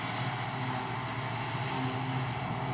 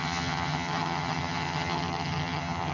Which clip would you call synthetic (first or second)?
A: second